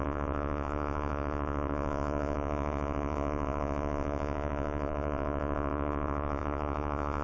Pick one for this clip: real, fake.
fake